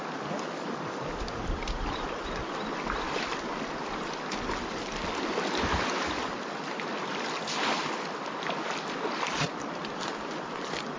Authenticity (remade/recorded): recorded